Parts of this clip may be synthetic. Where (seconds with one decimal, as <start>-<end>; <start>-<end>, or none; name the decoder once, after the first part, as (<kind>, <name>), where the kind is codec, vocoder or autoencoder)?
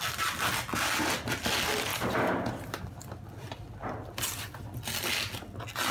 1.9-2.9 (vocoder, BigVGAN v2)